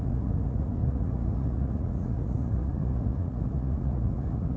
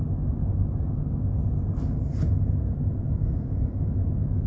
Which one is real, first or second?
second